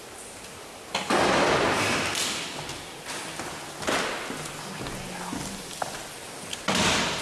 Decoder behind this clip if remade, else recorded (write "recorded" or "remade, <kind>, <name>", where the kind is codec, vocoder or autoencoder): recorded